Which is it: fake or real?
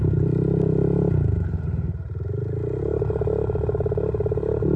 fake